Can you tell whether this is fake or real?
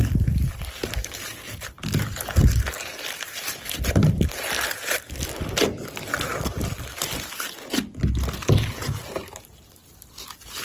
real